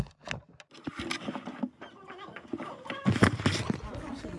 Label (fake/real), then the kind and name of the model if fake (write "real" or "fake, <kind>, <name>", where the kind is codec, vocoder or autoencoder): real